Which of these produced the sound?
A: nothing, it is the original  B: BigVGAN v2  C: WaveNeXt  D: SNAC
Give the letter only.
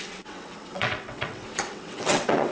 C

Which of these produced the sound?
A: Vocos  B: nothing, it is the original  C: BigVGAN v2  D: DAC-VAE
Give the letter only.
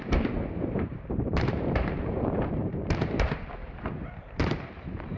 C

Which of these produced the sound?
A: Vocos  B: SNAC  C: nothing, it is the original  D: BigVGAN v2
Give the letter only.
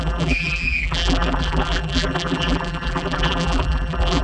D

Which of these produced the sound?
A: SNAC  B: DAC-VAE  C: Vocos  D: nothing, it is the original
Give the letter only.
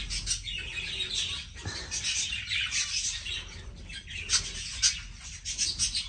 D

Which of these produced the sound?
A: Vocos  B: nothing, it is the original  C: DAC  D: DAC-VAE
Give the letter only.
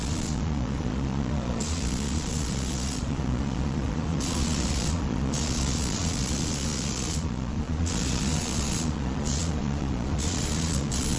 A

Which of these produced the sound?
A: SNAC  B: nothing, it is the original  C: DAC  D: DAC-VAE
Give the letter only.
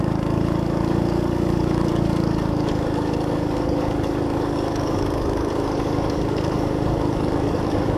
C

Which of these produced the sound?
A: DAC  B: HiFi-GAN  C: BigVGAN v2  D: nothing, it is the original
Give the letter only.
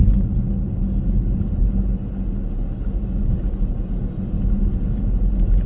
D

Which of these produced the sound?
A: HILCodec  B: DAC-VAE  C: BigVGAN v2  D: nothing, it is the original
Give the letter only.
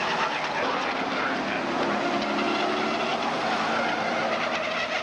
D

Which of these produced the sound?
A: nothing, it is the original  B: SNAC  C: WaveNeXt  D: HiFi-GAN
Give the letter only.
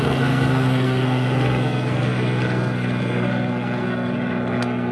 B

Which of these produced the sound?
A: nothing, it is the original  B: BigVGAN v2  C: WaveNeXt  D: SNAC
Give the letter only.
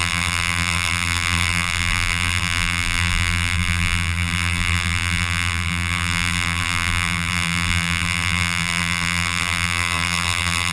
B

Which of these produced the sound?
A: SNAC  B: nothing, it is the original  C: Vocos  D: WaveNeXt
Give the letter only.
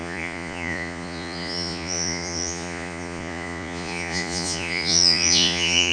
C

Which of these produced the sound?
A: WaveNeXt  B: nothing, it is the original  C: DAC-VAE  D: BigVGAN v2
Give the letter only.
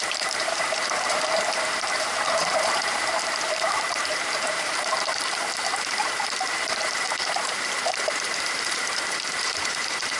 D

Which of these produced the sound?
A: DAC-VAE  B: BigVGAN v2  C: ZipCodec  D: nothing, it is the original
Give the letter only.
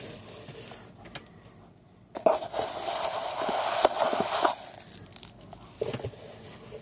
B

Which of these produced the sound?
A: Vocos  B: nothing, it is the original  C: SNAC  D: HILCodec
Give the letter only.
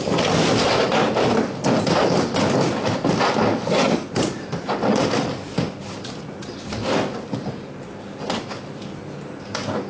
B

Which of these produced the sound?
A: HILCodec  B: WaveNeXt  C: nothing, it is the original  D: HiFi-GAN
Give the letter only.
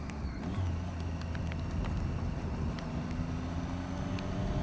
C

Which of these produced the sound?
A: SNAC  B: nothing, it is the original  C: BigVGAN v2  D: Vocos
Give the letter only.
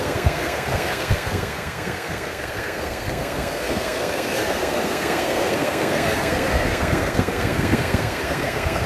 A